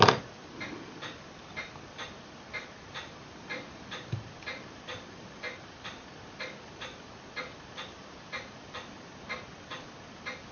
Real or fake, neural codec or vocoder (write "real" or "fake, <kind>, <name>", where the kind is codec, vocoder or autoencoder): real